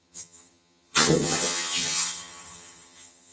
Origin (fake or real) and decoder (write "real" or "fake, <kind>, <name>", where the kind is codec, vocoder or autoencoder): fake, vocoder, HiFi-GAN